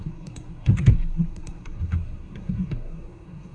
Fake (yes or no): yes